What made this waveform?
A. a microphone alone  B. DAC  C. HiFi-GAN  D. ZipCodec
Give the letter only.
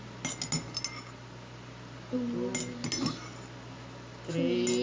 A